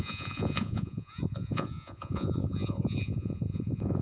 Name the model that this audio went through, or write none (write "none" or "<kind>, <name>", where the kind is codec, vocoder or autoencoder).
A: vocoder, Vocos